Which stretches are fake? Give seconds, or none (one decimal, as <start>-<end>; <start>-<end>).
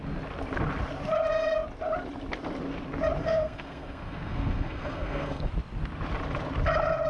3.2-5.5